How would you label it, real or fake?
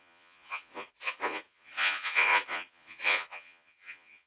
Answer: fake